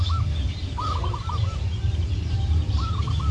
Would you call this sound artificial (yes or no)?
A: no